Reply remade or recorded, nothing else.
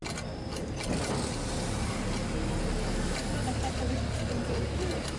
recorded